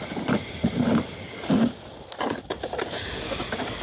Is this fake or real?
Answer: real